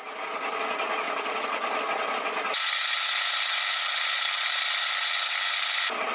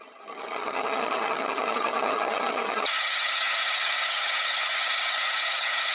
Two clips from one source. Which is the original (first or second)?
first